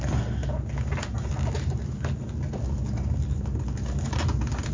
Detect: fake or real real